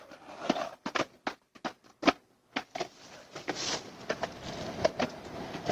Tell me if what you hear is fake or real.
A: real